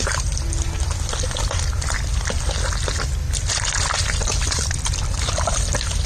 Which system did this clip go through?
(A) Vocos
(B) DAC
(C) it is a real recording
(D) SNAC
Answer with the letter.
C